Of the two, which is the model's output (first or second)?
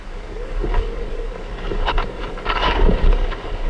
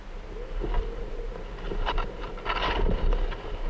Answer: first